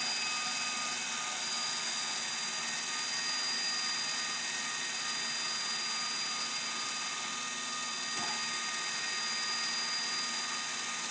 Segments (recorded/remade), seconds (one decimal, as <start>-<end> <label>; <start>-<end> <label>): 0.0-11.1 recorded